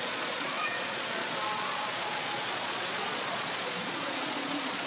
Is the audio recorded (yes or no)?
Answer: no